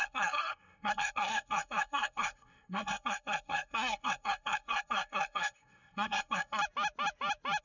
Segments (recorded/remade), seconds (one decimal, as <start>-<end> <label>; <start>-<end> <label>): 0.0-6.6 remade; 6.6-7.6 recorded